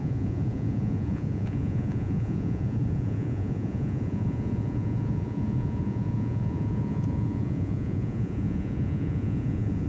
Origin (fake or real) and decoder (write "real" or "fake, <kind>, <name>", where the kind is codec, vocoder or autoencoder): fake, vocoder, Vocos